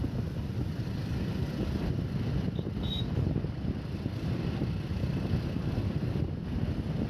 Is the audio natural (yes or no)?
yes